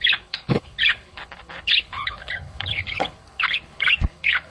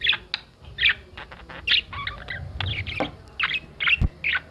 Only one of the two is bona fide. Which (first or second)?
second